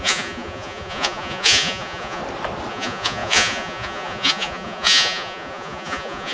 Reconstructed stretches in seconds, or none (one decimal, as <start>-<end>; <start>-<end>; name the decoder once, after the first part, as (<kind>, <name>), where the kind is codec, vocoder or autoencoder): 0.0-2.2 (vocoder, Vocos); 2.7-6.3